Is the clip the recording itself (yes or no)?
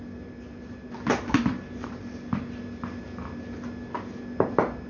yes